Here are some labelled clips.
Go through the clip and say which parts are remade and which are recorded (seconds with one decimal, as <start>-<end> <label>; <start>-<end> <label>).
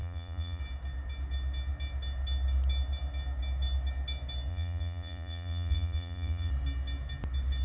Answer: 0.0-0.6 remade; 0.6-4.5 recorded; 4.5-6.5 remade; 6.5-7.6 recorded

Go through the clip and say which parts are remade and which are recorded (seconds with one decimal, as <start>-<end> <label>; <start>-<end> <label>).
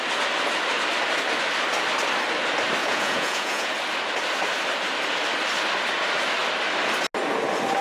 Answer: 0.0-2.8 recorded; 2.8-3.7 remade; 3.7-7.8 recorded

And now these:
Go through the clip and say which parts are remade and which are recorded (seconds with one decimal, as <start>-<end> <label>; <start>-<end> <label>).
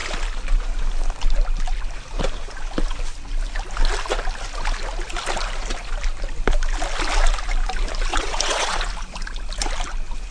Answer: 0.0-8.1 recorded; 8.1-8.8 remade; 8.8-10.3 recorded